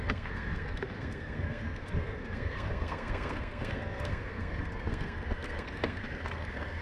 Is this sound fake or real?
fake